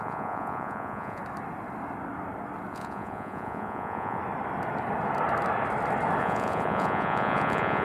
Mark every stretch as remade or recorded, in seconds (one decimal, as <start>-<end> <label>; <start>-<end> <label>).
0.0-1.2 remade; 1.2-2.7 recorded; 2.7-4.2 remade; 4.2-6.2 recorded; 6.2-7.8 remade